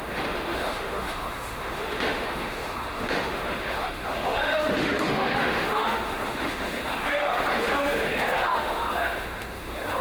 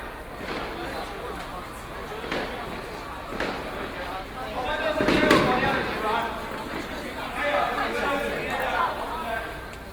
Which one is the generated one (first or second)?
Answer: first